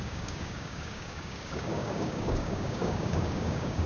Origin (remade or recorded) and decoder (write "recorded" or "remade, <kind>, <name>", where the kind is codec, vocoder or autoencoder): remade, codec, DAC